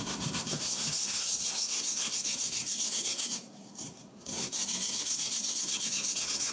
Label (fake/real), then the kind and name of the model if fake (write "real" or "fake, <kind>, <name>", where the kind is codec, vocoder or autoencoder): fake, codec, SNAC